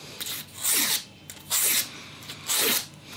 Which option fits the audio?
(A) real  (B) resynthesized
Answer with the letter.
A